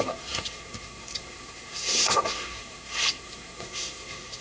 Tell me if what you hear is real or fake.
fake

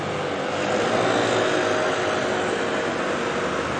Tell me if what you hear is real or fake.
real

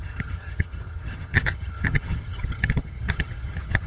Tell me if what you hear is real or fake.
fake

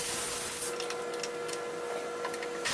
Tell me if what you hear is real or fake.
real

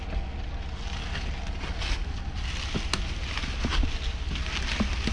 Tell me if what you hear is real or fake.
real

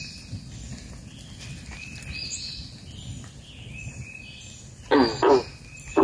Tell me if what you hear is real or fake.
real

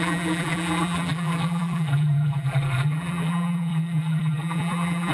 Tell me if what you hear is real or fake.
fake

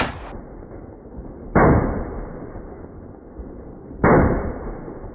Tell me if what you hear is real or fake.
real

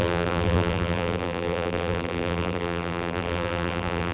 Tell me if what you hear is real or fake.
fake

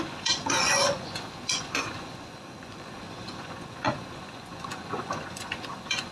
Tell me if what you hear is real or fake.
fake